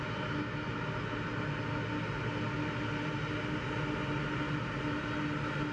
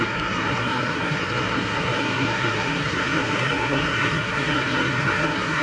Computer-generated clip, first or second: second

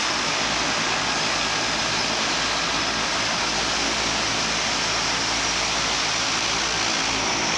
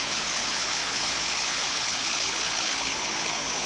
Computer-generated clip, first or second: second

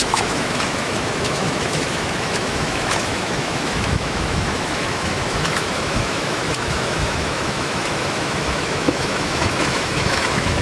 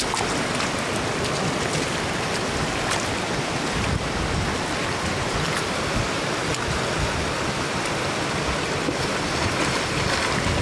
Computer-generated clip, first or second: first